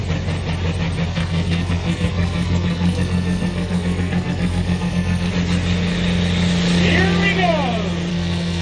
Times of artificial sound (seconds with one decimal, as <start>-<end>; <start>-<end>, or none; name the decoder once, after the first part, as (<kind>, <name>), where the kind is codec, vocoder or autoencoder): 1.1-5.3 (codec, SNAC); 8.1-8.6